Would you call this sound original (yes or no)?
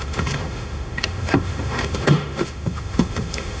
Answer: no